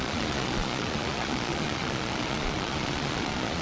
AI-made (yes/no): yes